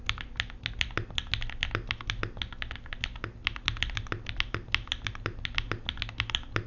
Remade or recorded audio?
recorded